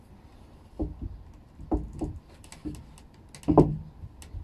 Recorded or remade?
recorded